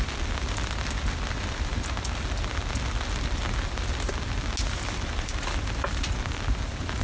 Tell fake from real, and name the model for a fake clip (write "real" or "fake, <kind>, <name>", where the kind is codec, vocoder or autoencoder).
real